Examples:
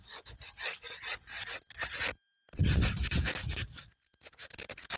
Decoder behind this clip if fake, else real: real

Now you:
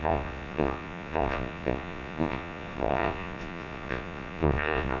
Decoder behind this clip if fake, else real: fake, vocoder, Vocos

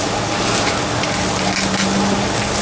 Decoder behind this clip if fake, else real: real